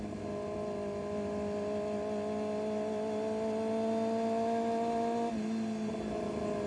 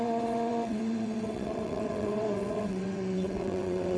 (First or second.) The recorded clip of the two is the first